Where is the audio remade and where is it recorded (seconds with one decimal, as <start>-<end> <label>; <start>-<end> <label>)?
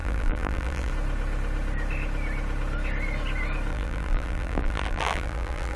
0.0-0.9 remade; 0.9-3.7 recorded; 3.7-5.8 remade